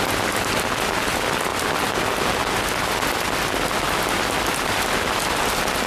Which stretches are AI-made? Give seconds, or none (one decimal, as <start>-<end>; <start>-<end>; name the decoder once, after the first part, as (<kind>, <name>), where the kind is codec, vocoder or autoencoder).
none